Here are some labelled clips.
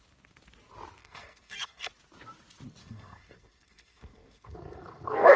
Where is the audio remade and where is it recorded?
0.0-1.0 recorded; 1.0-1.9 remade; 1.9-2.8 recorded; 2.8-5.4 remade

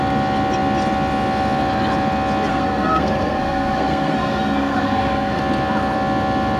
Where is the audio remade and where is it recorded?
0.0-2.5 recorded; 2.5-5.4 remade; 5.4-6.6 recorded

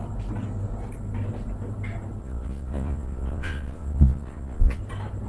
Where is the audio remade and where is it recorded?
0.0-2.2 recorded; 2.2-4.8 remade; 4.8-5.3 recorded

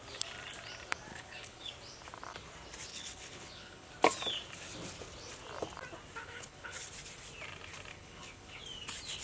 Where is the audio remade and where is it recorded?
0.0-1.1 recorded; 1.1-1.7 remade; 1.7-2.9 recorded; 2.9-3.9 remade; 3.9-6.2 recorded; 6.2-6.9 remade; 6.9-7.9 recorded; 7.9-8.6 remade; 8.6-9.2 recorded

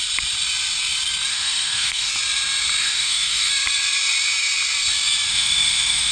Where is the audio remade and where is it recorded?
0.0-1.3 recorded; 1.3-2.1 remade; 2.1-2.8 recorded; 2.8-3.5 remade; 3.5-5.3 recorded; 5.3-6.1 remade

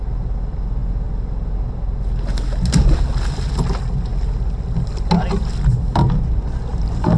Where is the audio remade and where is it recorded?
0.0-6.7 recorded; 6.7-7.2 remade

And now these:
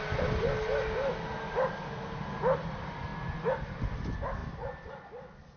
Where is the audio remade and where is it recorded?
0.0-3.1 recorded; 3.1-3.8 remade; 3.8-4.4 recorded; 4.4-4.9 remade; 4.9-5.6 recorded

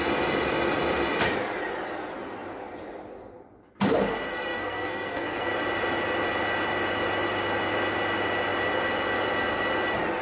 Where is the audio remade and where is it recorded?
0.0-4.3 recorded; 4.3-5.5 remade; 5.5-10.2 recorded